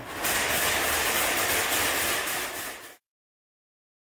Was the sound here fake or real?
real